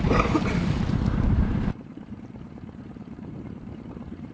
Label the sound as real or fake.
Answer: fake